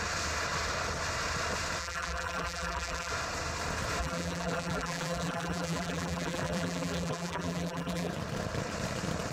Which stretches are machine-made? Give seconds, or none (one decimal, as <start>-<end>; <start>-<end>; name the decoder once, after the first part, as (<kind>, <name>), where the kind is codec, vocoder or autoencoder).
1.8-3.1 (vocoder, BigVGAN v2); 4.0-8.1